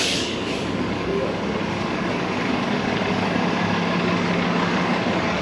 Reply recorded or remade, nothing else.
remade